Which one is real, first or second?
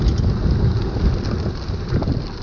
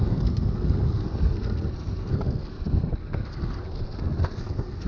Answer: first